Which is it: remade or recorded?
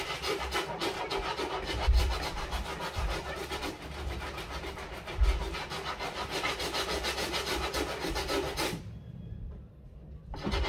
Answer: recorded